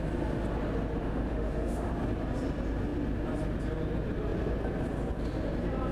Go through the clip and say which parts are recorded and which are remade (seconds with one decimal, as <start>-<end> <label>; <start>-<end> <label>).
0.0-1.0 recorded; 1.0-1.9 remade; 1.9-5.9 recorded